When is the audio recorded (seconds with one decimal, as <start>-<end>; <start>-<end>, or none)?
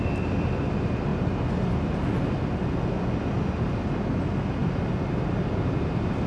0.0-6.3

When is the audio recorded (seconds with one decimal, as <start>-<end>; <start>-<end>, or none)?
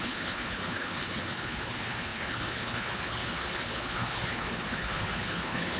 none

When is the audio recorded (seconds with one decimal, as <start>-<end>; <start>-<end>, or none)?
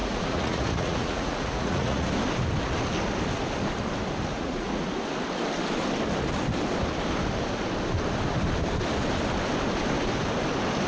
2.1-4.3; 4.9-10.9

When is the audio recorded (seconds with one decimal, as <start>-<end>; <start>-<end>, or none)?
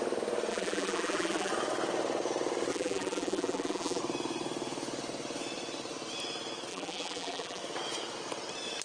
0.0-0.5; 1.5-2.7; 4.0-6.7; 7.6-8.8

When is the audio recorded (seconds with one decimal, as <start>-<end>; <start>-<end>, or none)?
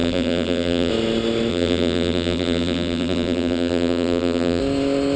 0.9-1.5; 4.6-5.2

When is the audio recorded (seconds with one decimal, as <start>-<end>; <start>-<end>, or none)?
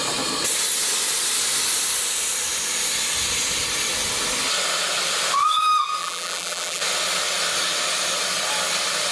0.0-6.0; 6.8-9.1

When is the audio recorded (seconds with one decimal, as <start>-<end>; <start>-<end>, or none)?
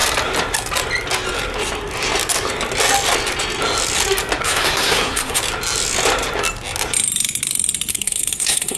0.0-4.4; 5.4-7.9